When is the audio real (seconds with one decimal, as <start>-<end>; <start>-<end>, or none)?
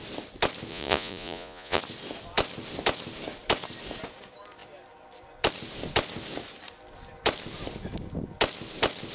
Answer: 0.0-0.7; 1.8-9.1